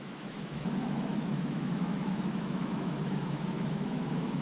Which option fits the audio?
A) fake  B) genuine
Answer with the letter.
A